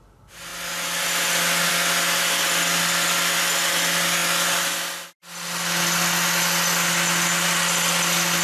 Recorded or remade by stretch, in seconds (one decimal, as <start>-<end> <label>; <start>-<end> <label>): 0.0-8.4 recorded